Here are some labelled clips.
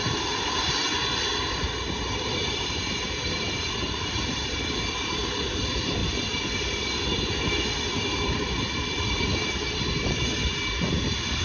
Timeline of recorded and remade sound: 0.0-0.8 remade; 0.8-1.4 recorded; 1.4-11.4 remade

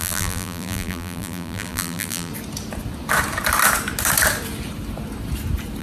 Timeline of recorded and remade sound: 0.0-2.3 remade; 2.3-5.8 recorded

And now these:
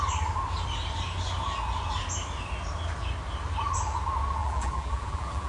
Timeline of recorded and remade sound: 0.0-4.4 recorded; 4.4-5.5 remade